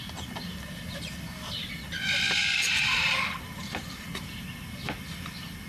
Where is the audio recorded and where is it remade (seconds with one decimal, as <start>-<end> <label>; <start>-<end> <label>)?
0.0-2.4 recorded; 2.4-4.5 remade; 4.5-5.7 recorded

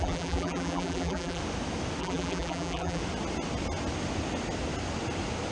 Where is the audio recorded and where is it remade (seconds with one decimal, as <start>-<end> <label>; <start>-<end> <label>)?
0.0-1.4 remade; 1.4-2.0 recorded; 2.0-3.0 remade; 3.0-5.5 recorded

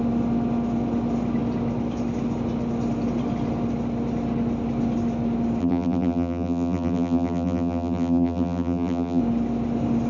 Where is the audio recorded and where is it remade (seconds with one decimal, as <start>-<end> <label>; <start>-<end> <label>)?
0.0-5.6 recorded; 5.6-9.2 remade; 9.2-10.1 recorded

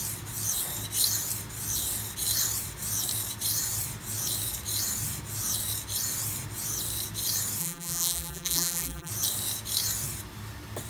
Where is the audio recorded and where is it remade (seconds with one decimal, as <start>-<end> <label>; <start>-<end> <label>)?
0.0-7.6 recorded; 7.6-9.1 remade; 9.1-10.9 recorded

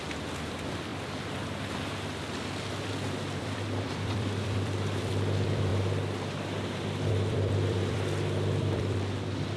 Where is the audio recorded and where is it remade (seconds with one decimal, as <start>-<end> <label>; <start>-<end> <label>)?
0.0-0.9 remade; 0.9-3.4 recorded; 3.4-5.7 remade; 5.7-7.1 recorded; 7.1-9.6 remade